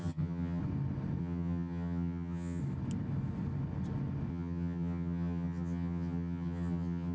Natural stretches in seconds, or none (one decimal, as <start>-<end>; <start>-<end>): 0.6-1.2; 2.6-4.3